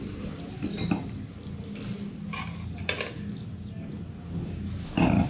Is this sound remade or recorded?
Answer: recorded